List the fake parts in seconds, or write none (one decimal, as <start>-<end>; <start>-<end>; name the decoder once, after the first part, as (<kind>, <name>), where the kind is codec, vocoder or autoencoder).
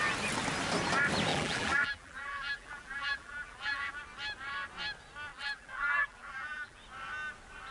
1.3-4.0 (vocoder, BigVGAN v2); 5.3-6.8